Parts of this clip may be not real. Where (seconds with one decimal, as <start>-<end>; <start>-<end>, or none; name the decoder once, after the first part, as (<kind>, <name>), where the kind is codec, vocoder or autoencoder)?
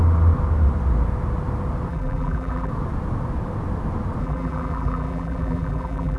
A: 1.9-2.7 (vocoder, BigVGAN v2); 4.2-6.2